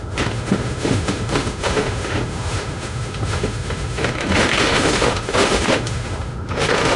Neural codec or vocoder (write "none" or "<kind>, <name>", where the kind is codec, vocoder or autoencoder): autoencoder, DAC-VAE